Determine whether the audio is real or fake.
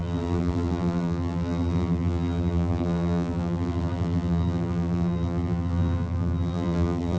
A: fake